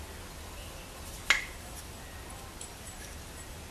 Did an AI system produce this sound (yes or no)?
no